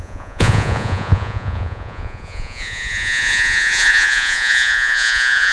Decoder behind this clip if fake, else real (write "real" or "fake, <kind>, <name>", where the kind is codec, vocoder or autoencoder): fake, vocoder, Vocos